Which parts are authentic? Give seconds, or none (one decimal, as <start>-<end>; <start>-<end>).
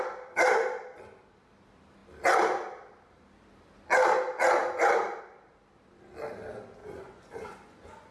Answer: 0.0-6.8